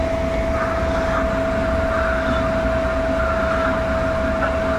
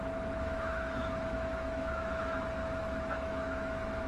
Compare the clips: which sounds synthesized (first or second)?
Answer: second